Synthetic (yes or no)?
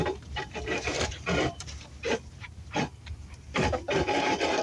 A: yes